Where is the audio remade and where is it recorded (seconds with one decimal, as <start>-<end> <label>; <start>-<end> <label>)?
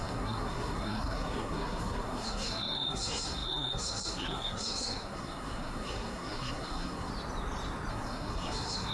0.0-7.1 remade; 7.1-7.9 recorded; 7.9-8.9 remade